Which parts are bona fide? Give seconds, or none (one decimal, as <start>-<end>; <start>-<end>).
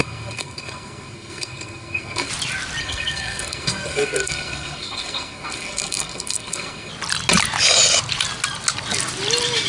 2.3-2.8; 6.9-9.7